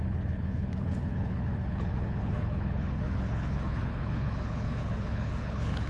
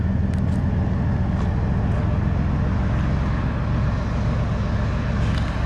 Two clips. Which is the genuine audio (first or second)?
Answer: second